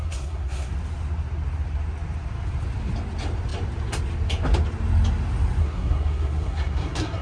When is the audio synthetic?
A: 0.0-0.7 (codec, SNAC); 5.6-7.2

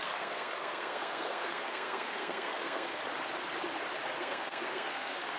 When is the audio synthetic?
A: 0.0-3.0 (codec, SNAC); 4.2-5.4

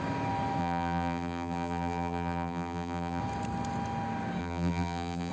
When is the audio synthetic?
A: 0.6-3.2 (vocoder, BigVGAN v2); 4.4-5.3